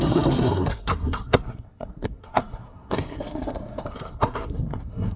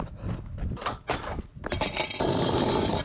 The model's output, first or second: first